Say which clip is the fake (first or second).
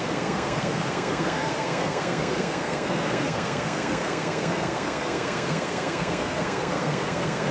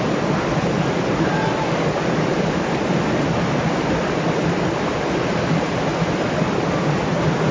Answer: first